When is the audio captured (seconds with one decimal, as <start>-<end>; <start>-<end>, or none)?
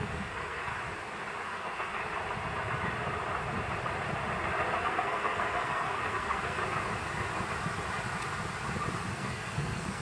0.7-1.4; 2.0-4.8; 6.6-9.1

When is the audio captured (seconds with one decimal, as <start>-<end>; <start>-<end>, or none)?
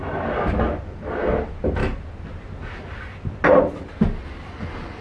0.0-5.0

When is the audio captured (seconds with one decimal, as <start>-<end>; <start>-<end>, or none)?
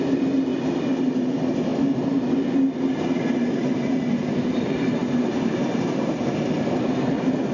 0.0-7.5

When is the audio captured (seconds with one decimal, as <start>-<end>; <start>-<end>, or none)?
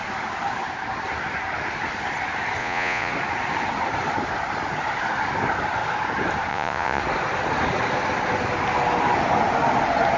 0.0-2.6; 3.1-6.5; 7.0-10.2